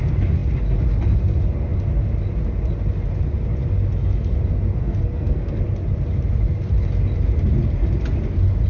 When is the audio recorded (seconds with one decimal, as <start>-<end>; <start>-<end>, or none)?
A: 0.0-4.8; 5.6-8.7